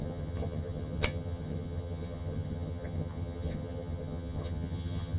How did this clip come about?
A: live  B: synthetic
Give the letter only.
B